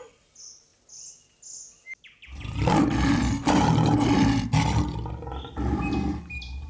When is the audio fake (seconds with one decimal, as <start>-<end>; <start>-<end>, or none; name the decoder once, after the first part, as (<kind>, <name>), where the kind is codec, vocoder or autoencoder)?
none